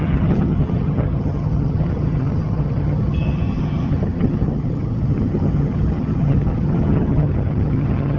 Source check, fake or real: fake